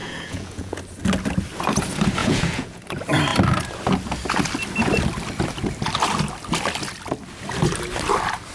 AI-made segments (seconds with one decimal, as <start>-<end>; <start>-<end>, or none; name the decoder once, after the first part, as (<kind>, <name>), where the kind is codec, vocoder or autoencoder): 0.0-0.8 (vocoder, Vocos); 2.2-2.8